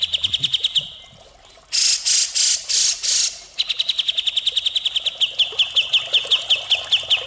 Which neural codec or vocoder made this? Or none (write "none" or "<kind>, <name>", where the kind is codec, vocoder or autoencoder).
none